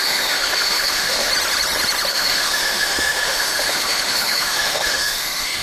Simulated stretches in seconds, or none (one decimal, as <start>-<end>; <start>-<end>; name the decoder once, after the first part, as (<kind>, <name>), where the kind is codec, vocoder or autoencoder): 0.0-1.3 (autoencoder, DAC-VAE); 2.1-5.6